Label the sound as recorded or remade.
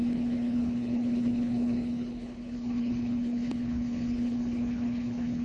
remade